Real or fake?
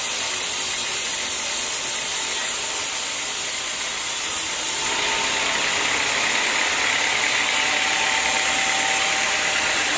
real